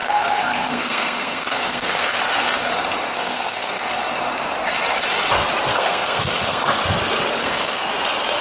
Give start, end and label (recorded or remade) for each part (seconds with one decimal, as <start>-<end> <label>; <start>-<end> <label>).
0.0-2.2 remade; 2.2-3.1 recorded; 3.1-3.9 remade; 3.9-5.7 recorded; 5.7-6.8 remade; 6.8-7.4 recorded; 7.4-7.9 remade; 7.9-8.4 recorded